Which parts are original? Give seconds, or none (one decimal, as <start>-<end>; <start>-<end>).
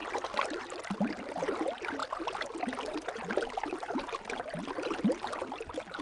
0.0-6.0